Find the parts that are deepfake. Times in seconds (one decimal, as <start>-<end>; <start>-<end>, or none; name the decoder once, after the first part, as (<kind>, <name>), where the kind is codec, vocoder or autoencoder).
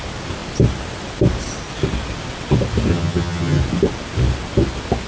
2.9-3.6 (vocoder, HiFi-GAN)